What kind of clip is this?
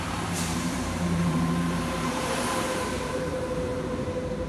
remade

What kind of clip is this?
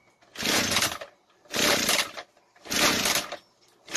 recorded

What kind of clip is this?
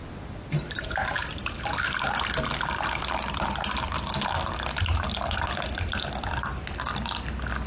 recorded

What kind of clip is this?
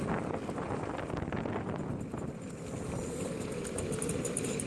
recorded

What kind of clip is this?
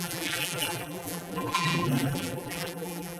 remade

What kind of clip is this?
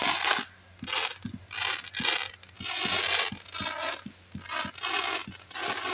recorded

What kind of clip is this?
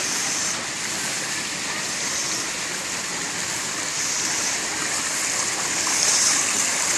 remade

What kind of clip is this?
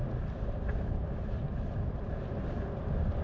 recorded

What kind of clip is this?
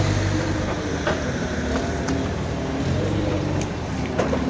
remade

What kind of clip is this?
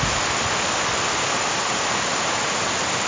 recorded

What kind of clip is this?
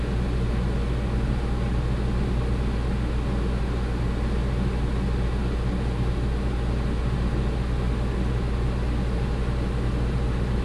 recorded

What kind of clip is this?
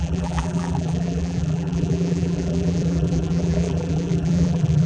remade